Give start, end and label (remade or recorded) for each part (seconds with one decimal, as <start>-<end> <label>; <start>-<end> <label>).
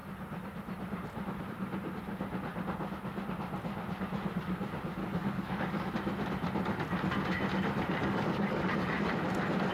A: 0.0-5.0 recorded; 5.0-5.9 remade; 5.9-8.0 recorded; 8.0-9.1 remade; 9.1-9.7 recorded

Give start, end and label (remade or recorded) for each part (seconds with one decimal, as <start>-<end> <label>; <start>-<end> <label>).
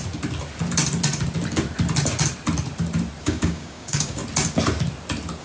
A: 0.0-3.2 recorded; 3.2-4.2 remade; 4.2-5.4 recorded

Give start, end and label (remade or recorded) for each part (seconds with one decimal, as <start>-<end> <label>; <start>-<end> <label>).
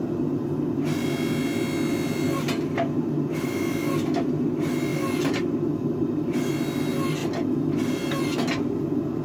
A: 0.0-9.2 recorded